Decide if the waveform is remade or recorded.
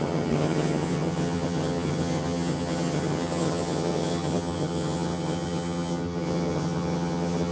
remade